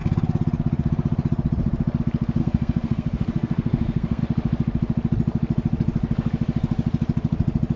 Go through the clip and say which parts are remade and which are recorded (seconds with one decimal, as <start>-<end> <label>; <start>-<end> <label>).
0.0-2.4 recorded; 2.4-4.2 remade; 4.2-7.8 recorded